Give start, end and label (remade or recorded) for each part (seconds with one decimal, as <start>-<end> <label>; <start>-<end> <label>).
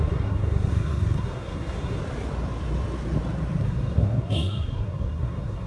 0.0-2.0 remade; 2.0-3.6 recorded; 3.6-5.7 remade